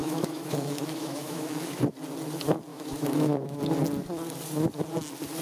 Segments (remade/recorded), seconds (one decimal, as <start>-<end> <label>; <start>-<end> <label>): 0.0-1.8 remade; 1.8-2.7 recorded; 2.7-3.6 remade; 3.6-5.4 recorded